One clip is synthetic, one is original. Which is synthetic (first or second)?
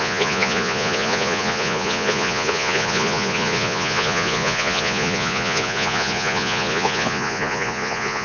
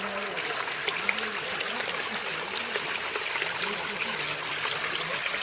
first